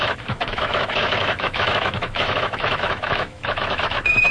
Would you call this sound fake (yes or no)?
yes